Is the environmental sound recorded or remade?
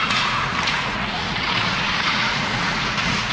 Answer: remade